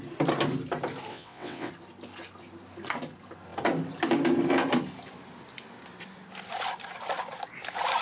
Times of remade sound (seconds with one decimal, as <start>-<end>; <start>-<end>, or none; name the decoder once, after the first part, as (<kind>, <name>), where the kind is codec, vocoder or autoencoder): 1.1-1.7 (vocoder, WaveNeXt)

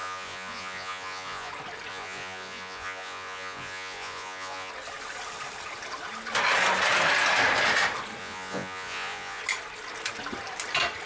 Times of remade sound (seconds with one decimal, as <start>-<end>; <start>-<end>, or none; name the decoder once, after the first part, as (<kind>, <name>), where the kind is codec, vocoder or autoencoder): 0.0-1.5 (vocoder, Vocos); 1.9-4.7; 8.2-9.4